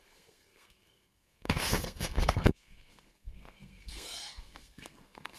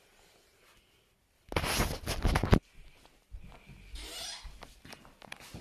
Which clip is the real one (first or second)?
second